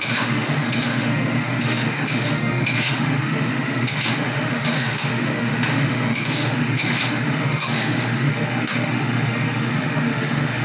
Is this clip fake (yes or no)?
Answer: yes